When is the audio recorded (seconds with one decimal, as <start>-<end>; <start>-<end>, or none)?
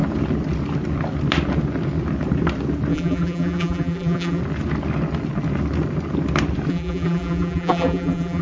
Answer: 0.0-2.9; 4.4-6.7